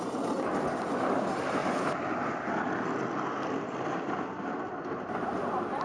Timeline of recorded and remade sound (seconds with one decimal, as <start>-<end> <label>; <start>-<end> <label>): 0.0-5.8 recorded

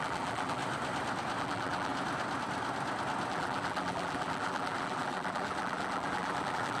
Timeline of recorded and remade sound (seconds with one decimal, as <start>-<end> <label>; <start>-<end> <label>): 0.0-0.6 remade; 0.6-1.4 recorded; 1.4-1.9 remade; 1.9-3.3 recorded; 3.3-6.8 remade

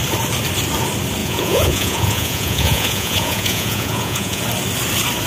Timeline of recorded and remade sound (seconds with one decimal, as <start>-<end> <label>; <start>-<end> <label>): 0.0-1.2 recorded; 1.2-4.4 remade; 4.4-5.3 recorded

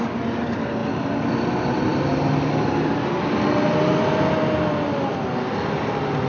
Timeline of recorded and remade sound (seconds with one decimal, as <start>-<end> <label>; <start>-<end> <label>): 0.0-6.3 recorded

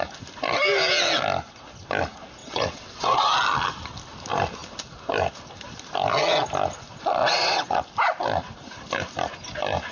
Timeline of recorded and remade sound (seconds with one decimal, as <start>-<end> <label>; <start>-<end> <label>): 0.0-2.4 recorded; 2.4-3.3 remade; 3.3-7.2 recorded; 7.2-7.8 remade; 7.8-9.9 recorded